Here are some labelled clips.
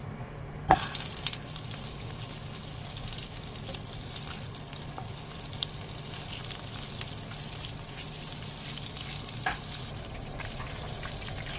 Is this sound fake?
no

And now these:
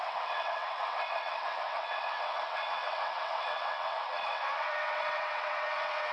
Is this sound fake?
yes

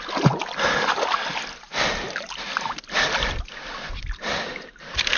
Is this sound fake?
no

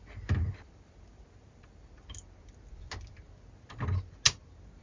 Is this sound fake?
no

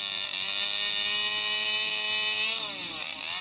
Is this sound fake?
no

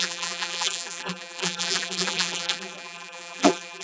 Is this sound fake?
yes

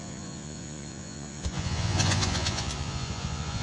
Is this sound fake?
yes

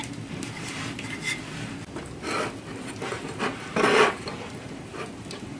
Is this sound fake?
yes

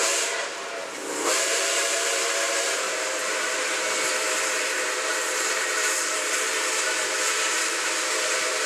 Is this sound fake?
yes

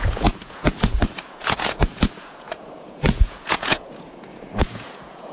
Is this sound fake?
yes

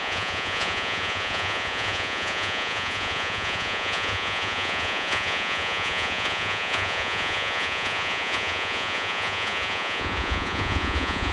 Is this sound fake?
yes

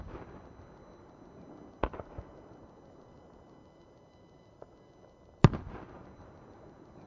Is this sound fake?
no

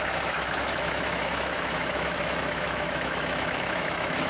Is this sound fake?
yes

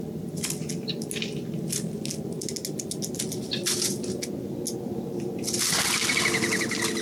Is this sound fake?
no